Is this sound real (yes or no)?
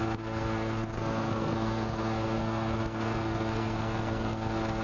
no